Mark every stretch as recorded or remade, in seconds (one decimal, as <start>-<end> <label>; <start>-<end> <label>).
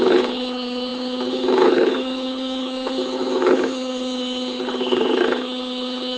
0.0-6.2 remade